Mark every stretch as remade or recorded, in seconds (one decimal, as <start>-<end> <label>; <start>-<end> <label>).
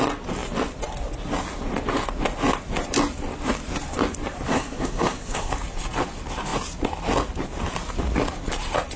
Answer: 0.0-4.5 recorded; 4.5-5.5 remade; 5.5-9.0 recorded